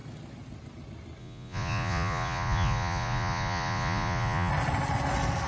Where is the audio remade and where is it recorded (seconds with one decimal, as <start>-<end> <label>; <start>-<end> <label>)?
0.0-1.2 recorded; 1.2-4.5 remade; 4.5-5.5 recorded